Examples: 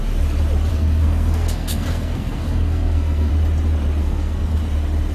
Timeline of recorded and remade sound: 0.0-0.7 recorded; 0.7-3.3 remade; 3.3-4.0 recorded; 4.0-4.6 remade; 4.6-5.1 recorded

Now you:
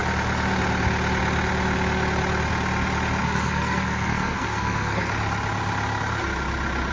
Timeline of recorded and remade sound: 0.0-3.2 recorded; 3.2-5.1 remade; 5.1-6.9 recorded